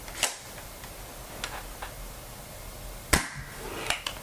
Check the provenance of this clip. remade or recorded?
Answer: recorded